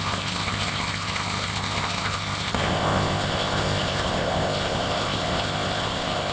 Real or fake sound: fake